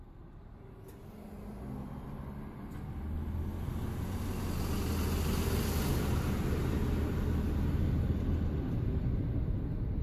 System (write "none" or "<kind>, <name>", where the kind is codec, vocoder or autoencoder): none